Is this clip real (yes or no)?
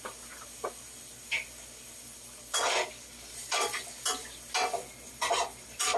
yes